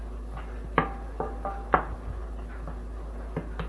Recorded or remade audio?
recorded